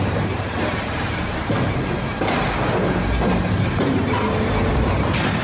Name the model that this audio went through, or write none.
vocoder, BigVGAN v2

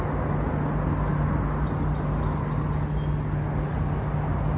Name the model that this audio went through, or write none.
none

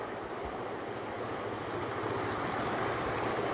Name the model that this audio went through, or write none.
none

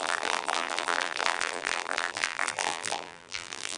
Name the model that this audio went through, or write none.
vocoder, BigVGAN v2